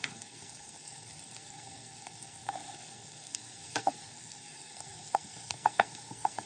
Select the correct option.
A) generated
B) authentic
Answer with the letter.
A